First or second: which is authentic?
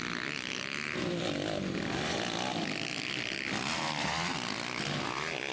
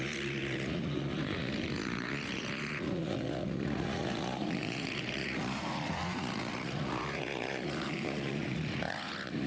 first